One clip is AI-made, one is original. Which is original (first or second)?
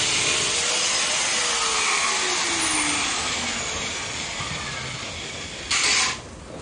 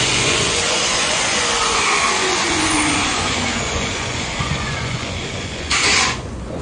first